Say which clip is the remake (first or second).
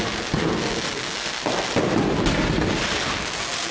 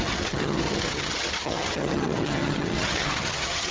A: second